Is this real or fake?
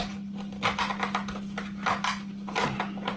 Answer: real